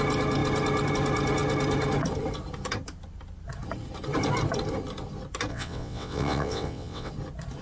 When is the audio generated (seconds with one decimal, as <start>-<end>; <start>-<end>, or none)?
5.5-7.1